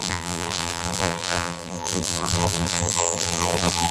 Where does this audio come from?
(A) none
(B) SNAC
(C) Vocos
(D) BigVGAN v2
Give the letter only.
D